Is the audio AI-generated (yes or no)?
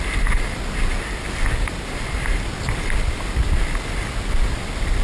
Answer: no